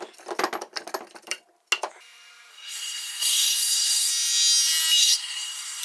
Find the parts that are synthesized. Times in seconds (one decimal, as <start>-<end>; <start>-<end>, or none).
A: 2.5-4.1; 5.0-5.8